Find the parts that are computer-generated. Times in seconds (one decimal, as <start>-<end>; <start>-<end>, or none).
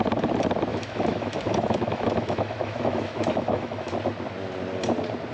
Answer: 0.7-3.9